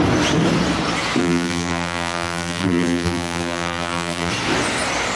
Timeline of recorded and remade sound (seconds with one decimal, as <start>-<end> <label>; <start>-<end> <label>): 0.0-1.2 recorded; 1.2-4.3 remade; 4.3-5.2 recorded